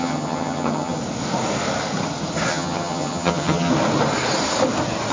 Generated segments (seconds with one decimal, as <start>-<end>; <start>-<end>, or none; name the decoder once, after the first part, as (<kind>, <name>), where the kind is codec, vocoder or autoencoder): 0.0-1.0 (vocoder, HiFi-GAN); 2.5-3.7